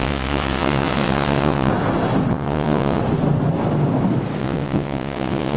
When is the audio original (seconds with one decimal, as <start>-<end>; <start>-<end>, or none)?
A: 1.7-2.3; 3.0-4.4